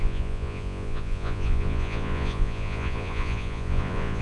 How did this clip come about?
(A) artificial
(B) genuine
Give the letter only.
A